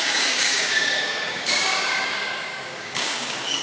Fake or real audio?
fake